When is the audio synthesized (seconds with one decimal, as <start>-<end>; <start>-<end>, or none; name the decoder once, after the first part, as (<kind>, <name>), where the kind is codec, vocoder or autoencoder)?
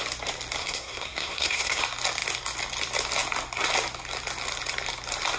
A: 0.6-1.8 (codec, SNAC)